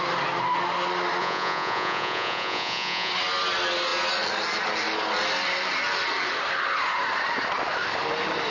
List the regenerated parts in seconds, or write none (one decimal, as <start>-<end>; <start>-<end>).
1.2-3.1